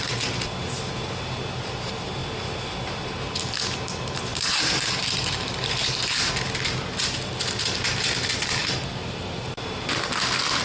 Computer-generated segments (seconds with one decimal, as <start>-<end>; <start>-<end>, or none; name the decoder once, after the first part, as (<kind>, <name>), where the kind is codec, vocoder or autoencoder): 4.3-6.3 (vocoder, BigVGAN v2); 8.6-9.2